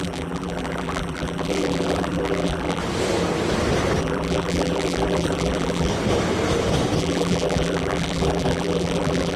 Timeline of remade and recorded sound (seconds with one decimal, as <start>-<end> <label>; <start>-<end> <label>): 0.0-2.8 remade; 2.8-4.0 recorded; 4.0-5.9 remade; 5.9-7.0 recorded; 7.0-9.4 remade